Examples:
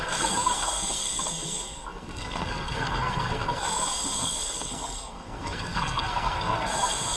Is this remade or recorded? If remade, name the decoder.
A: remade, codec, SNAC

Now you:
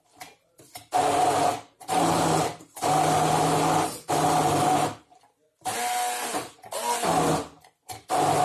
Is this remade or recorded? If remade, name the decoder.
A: recorded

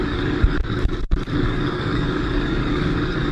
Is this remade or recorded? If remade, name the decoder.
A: remade, codec, DAC